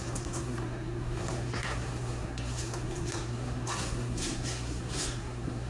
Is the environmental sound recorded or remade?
remade